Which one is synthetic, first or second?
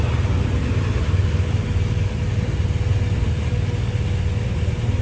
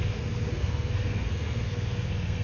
second